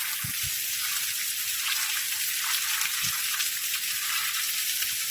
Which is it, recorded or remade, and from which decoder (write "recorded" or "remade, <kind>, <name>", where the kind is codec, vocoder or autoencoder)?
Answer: recorded